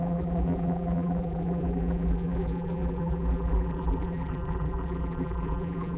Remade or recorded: remade